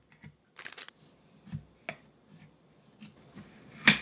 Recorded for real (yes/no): yes